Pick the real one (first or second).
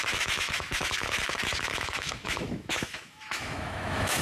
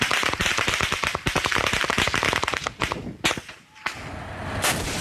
second